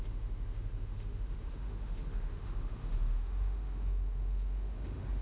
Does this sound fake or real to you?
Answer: fake